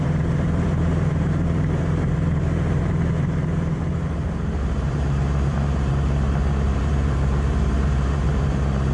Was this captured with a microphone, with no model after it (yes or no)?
no